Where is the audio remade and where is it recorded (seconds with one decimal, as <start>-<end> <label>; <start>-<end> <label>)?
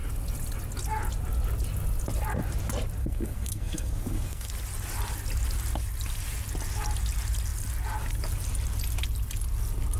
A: 0.0-3.0 recorded; 3.0-4.5 remade; 4.5-10.0 recorded